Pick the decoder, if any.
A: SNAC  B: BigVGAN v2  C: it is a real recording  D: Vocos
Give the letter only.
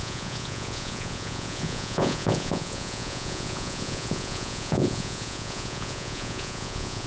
D